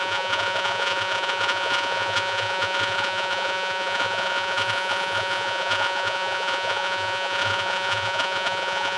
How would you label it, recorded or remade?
remade